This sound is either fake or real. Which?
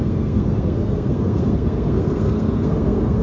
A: fake